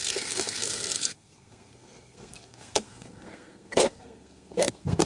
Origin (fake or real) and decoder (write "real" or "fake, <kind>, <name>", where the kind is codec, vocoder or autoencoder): fake, codec, SNAC